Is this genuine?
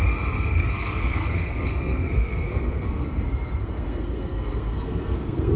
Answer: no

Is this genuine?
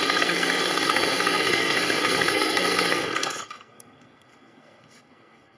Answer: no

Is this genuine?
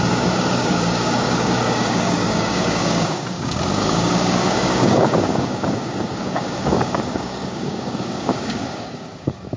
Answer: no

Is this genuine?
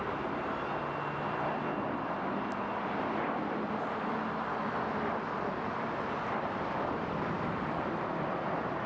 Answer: yes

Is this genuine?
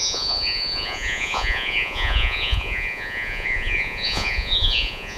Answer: no